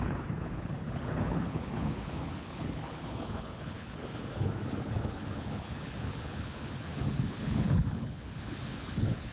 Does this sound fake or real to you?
fake